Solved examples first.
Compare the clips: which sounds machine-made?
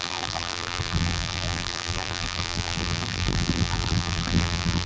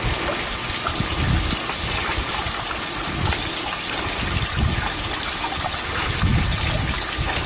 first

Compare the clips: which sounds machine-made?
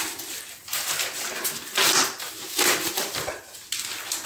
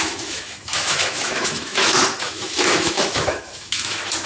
second